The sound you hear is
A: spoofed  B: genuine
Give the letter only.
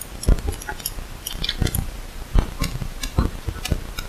B